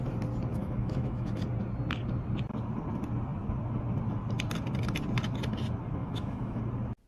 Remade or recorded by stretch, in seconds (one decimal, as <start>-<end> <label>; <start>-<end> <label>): 0.0-0.5 recorded; 0.5-1.4 remade; 1.4-6.0 recorded; 6.0-6.6 remade; 6.6-7.1 recorded